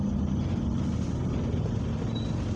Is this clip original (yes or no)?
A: yes